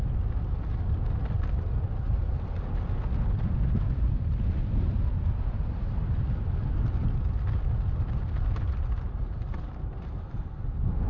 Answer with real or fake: real